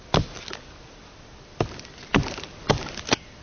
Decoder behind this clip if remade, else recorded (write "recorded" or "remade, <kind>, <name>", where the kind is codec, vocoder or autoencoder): recorded